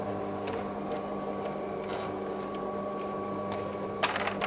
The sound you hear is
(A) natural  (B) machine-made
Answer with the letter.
A